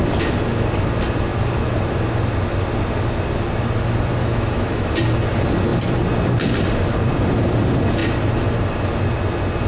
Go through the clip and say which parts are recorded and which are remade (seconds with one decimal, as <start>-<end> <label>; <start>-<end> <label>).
0.0-4.2 recorded; 4.2-4.9 remade; 4.9-9.7 recorded